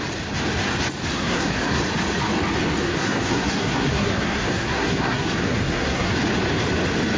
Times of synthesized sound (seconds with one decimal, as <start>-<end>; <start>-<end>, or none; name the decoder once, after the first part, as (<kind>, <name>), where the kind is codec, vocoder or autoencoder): 1.1-1.8 (codec, SNAC); 2.8-6.1